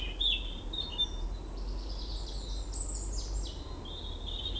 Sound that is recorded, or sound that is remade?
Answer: recorded